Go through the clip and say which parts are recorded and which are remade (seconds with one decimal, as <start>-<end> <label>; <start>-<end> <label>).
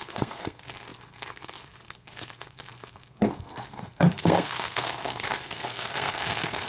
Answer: 0.0-6.7 remade